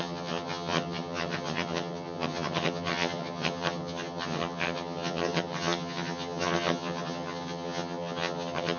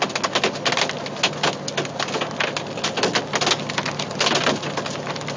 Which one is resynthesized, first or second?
first